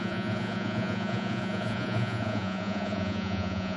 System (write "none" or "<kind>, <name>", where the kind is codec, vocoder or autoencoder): vocoder, Vocos